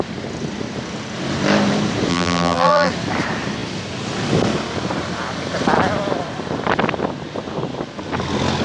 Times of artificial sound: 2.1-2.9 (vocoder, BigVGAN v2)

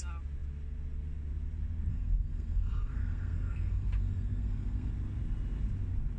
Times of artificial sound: 1.9-4.9 (codec, SNAC)

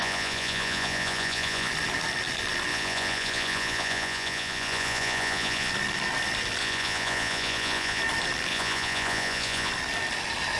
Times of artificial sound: 0.0-1.7 (vocoder, Vocos); 2.7-5.7; 6.6-8.0; 8.5-9.7

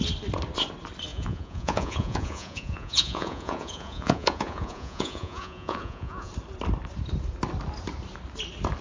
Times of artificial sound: 1.1-6.3 (vocoder, Vocos)

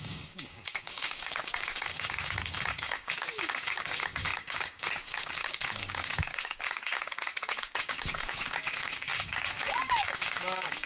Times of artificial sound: 0.0-10.9 (codec, DAC)

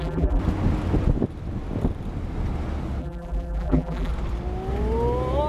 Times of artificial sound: 0.0-0.4 (vocoder, BigVGAN v2); 3.0-4.1

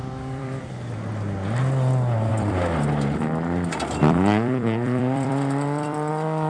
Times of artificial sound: 0.0-0.6 (vocoder, BigVGAN v2); 2.3-6.1

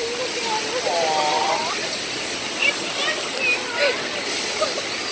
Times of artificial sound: none